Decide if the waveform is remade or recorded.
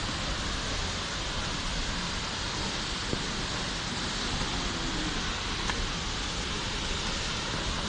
recorded